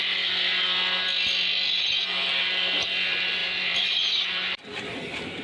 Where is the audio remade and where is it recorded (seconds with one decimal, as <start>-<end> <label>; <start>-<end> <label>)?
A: 0.0-3.4 recorded; 3.4-5.4 remade